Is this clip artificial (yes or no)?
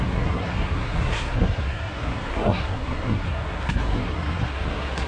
yes